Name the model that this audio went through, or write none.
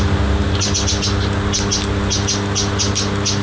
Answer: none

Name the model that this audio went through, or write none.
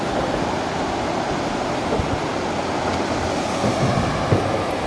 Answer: none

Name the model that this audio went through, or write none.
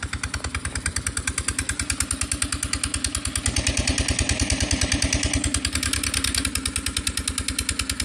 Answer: none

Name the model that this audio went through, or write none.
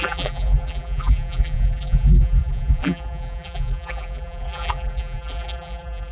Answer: vocoder, BigVGAN v2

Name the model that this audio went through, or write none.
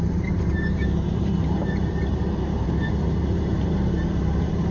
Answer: vocoder, BigVGAN v2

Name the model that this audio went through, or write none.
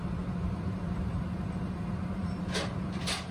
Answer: vocoder, BigVGAN v2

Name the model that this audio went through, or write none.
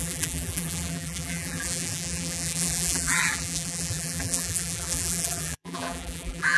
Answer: vocoder, BigVGAN v2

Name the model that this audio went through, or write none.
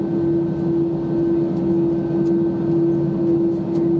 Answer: none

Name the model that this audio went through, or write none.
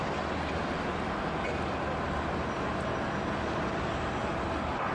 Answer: none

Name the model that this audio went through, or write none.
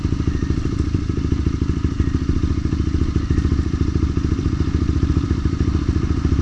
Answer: vocoder, BigVGAN v2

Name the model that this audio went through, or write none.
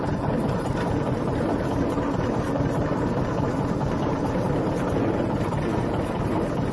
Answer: vocoder, BigVGAN v2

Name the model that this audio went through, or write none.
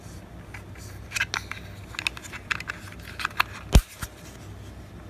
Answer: none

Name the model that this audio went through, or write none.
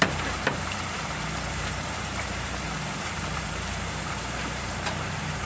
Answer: vocoder, BigVGAN v2